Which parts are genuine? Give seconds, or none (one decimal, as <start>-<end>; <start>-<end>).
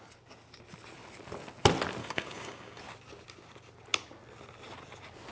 0.0-2.0; 2.8-5.3